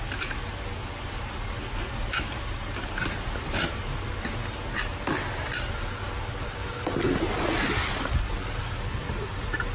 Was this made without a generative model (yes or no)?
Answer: yes